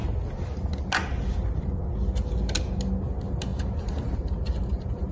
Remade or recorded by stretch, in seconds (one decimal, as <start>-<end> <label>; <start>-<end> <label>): 0.0-3.5 recorded; 3.5-5.1 remade